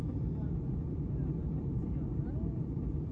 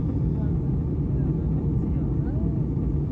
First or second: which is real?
second